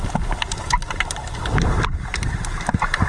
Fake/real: real